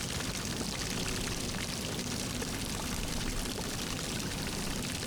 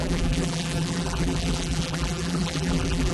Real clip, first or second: first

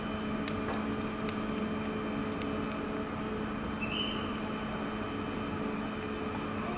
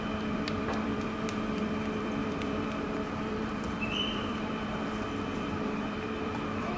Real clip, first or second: first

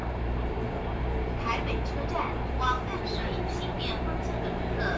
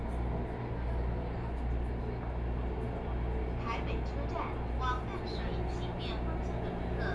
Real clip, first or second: second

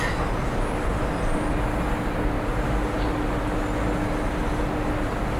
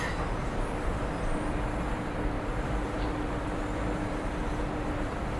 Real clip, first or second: first